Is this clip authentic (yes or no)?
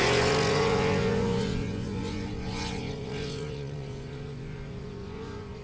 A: no